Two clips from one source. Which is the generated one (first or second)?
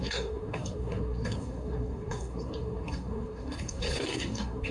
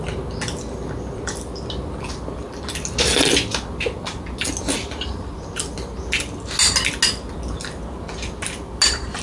first